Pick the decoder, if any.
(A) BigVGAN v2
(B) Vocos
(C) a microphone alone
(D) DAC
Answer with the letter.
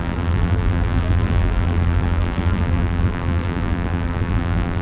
A